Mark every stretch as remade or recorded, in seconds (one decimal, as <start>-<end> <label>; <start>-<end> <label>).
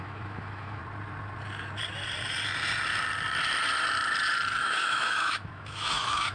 0.0-0.8 remade; 0.8-4.6 recorded; 4.6-6.3 remade